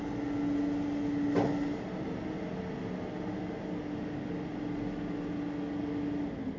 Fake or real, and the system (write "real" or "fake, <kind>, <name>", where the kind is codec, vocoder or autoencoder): real